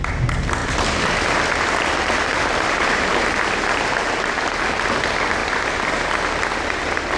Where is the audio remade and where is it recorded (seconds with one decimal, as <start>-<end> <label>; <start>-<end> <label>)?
0.0-0.6 recorded; 0.6-4.9 remade; 4.9-5.4 recorded; 5.4-5.9 remade; 5.9-7.2 recorded